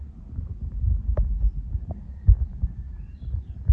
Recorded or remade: recorded